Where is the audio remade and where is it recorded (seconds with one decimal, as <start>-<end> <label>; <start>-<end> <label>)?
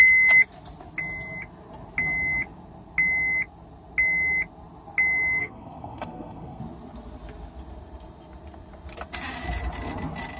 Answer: 0.0-5.4 recorded; 5.4-6.6 remade; 6.6-10.4 recorded